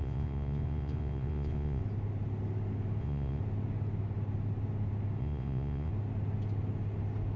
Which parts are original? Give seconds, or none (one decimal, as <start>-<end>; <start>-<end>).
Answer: 1.8-3.0; 3.4-5.2; 5.9-7.4